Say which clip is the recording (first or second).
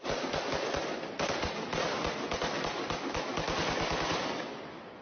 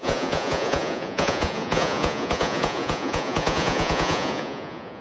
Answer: first